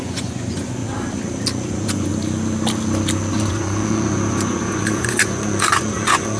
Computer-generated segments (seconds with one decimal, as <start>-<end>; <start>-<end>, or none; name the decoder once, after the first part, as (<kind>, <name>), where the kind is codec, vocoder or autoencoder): 0.0-0.8 (vocoder, Vocos); 1.7-2.1; 3.3-6.4

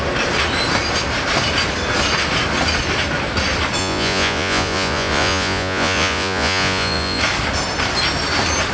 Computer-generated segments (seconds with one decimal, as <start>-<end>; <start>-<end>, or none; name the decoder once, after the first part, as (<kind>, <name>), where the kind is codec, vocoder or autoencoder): 3.8-7.2 (vocoder, Vocos)

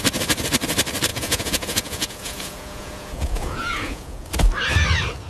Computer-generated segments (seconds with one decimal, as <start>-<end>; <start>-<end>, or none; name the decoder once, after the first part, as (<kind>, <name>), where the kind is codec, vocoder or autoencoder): 1.1-4.3 (vocoder, Vocos)

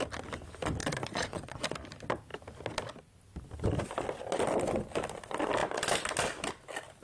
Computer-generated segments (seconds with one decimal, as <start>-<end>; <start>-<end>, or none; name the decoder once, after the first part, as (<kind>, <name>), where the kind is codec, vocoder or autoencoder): 0.8-1.6 (vocoder, Vocos)